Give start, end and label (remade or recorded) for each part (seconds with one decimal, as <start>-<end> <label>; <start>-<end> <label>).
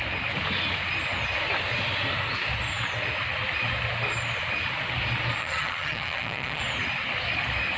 0.0-5.4 recorded; 5.4-6.6 remade; 6.6-7.8 recorded